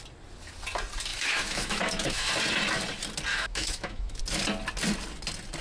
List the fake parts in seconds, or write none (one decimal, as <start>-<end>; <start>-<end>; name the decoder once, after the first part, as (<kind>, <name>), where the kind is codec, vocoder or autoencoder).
1.1-2.3 (autoencoder, DAC-VAE); 3.3-4.2